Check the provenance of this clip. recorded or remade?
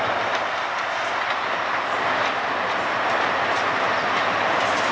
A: recorded